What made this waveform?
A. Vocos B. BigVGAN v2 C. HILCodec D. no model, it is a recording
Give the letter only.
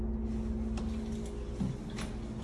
D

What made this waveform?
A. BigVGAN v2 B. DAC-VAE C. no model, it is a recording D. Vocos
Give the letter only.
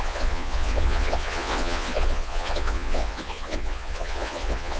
D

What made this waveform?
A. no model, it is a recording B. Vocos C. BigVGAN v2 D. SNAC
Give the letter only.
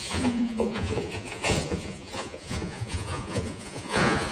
B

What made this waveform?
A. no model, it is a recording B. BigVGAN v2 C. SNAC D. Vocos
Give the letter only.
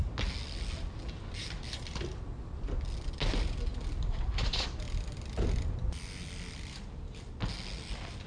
A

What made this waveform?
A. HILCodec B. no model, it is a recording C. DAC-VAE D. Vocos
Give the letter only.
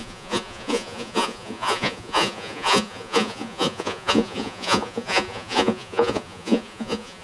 D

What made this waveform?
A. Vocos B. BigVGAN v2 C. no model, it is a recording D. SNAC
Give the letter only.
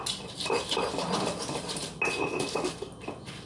C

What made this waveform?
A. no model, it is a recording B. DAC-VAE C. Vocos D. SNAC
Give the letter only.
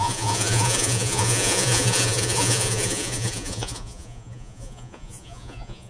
C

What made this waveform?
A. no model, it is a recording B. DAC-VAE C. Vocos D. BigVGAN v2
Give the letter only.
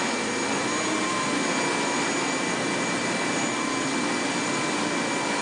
A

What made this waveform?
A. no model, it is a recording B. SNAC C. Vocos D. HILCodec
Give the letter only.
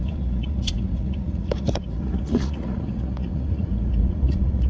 C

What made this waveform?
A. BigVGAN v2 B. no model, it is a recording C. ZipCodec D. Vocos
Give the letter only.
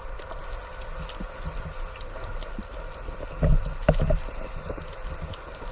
B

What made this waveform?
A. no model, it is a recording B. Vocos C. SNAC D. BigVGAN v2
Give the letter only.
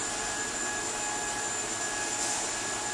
A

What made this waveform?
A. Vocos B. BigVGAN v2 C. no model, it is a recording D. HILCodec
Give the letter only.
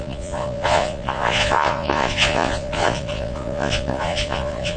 A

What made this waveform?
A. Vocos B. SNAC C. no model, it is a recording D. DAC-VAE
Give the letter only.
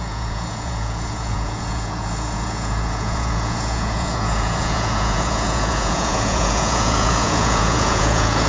A